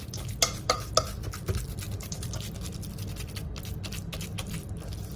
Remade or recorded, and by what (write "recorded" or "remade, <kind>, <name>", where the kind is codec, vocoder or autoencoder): recorded